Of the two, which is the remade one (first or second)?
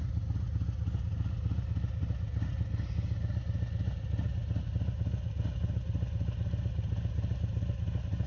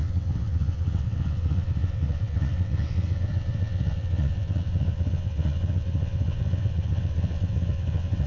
second